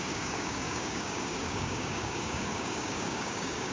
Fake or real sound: fake